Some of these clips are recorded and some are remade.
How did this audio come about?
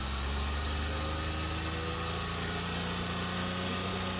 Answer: recorded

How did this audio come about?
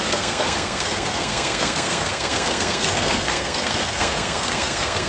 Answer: remade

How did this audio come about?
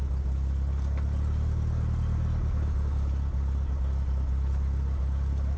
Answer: recorded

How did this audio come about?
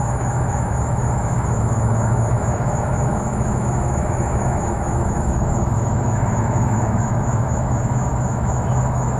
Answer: remade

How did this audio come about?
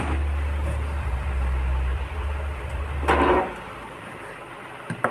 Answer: recorded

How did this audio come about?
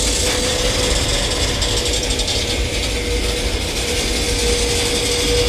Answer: recorded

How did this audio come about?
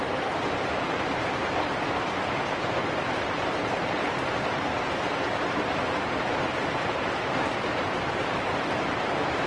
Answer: remade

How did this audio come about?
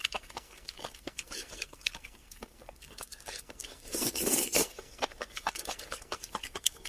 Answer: remade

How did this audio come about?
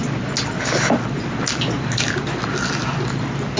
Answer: recorded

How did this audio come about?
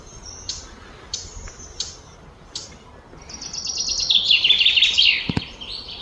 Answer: recorded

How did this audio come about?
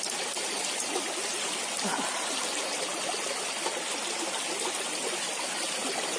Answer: recorded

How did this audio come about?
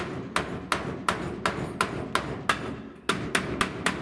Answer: recorded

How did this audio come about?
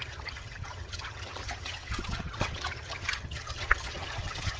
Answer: remade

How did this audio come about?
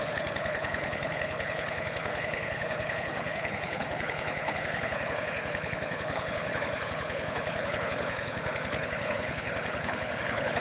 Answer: remade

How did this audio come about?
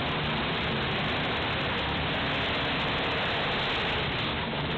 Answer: recorded